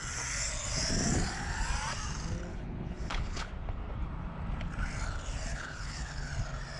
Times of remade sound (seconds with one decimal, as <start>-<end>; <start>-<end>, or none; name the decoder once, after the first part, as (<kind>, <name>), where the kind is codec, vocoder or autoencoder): 2.5-3.5 (codec, HILCodec); 5.5-6.3